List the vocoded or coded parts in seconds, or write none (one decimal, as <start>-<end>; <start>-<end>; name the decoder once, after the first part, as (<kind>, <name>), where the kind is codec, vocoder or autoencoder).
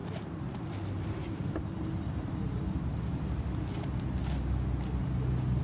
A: 0.0-3.4 (vocoder, BigVGAN v2)